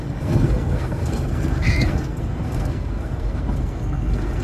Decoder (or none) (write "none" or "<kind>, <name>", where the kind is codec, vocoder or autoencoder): codec, SNAC